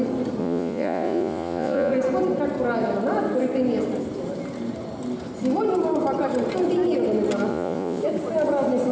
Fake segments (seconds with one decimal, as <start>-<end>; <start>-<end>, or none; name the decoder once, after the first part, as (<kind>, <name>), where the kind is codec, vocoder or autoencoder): 0.4-1.9 (vocoder, Vocos); 7.5-8.0